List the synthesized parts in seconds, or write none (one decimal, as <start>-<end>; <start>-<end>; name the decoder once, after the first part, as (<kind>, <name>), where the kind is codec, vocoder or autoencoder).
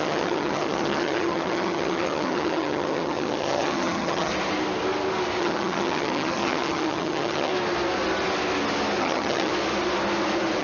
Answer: 0.0-4.3 (vocoder, HiFi-GAN); 5.4-7.5; 9.0-9.5